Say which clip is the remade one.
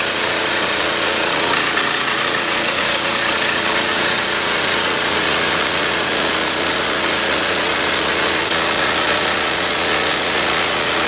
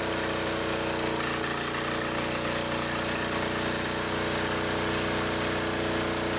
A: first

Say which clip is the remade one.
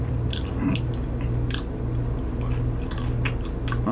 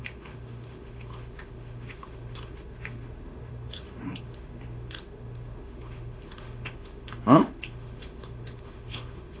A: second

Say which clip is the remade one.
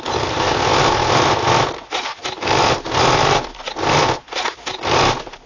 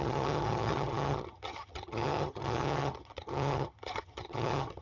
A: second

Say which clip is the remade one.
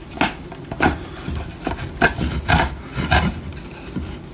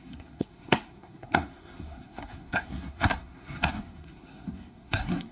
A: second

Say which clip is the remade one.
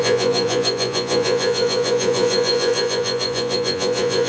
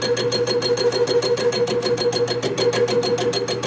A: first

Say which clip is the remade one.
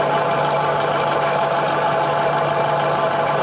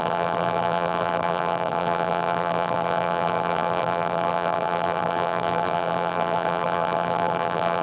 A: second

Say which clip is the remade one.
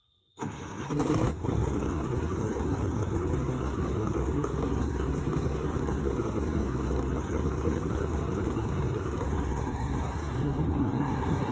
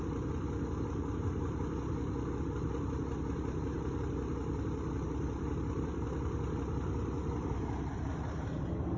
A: first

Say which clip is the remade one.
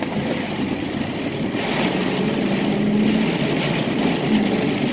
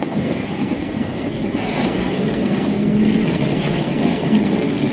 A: second